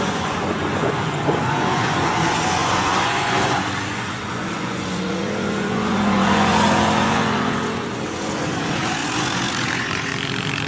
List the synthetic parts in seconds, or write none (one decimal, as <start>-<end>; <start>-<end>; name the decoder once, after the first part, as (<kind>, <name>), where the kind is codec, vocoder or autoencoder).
0.0-10.1 (vocoder, Vocos)